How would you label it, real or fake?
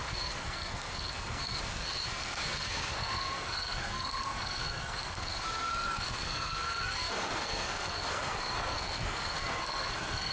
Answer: fake